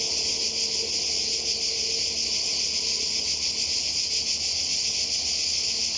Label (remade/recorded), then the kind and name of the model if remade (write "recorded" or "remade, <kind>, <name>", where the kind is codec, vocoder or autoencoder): recorded